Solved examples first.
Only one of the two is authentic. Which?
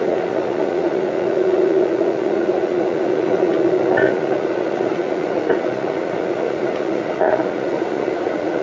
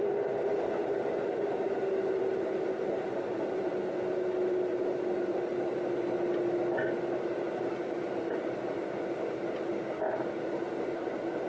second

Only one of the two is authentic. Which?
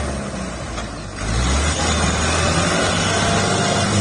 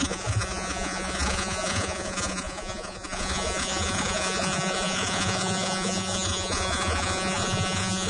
first